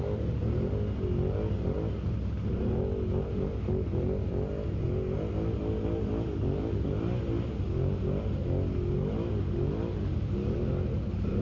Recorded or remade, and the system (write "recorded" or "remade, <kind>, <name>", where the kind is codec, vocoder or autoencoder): recorded